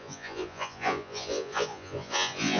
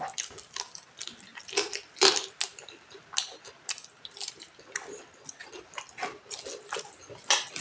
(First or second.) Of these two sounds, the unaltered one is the second